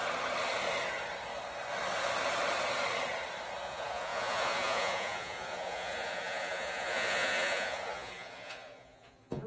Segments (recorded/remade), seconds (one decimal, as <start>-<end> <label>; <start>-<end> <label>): 0.0-3.6 recorded; 3.6-9.5 remade